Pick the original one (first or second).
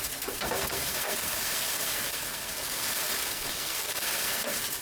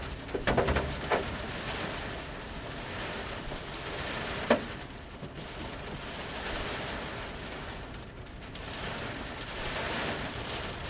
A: second